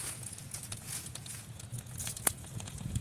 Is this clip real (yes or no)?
no